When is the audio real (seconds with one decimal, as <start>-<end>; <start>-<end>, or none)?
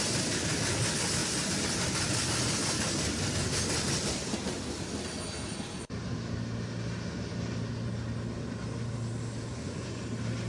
0.0-9.5; 10.0-10.5